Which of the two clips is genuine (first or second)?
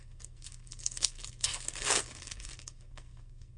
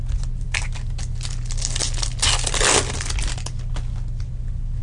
second